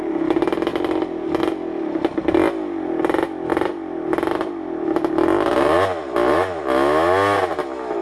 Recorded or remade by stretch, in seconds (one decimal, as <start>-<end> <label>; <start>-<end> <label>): 0.0-3.5 recorded; 3.5-4.5 remade; 4.5-8.0 recorded